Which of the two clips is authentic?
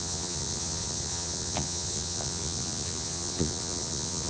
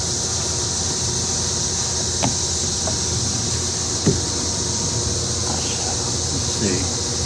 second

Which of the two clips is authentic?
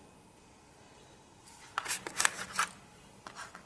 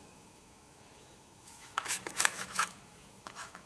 first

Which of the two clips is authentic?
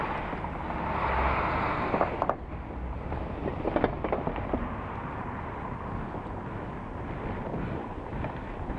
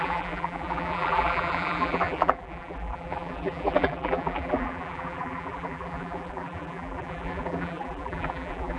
first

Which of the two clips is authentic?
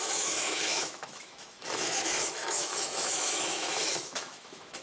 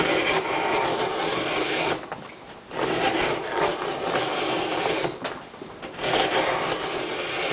second